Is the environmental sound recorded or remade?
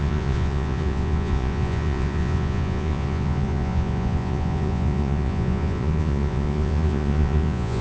remade